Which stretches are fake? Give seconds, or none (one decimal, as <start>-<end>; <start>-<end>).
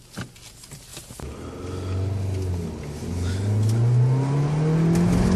none